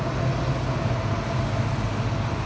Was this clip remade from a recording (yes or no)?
no